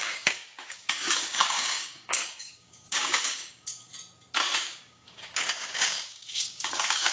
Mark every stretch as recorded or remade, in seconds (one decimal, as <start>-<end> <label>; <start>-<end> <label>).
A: 0.0-3.9 remade; 3.9-4.6 recorded; 4.6-7.1 remade